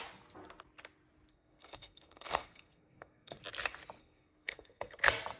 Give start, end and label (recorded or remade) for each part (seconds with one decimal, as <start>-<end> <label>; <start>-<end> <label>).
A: 0.0-1.3 recorded; 1.3-3.4 remade; 3.4-4.0 recorded; 4.0-5.0 remade; 5.0-5.4 recorded